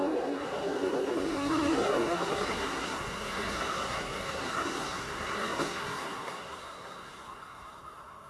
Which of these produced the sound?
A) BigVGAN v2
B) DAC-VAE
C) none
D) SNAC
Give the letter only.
D